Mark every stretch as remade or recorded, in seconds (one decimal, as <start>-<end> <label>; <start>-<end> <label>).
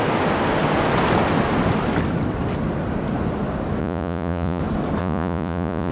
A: 0.0-3.8 recorded; 3.8-4.6 remade; 4.6-5.0 recorded; 5.0-5.9 remade